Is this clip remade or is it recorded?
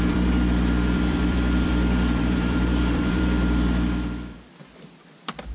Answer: remade